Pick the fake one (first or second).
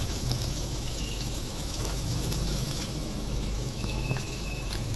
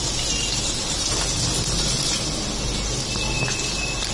first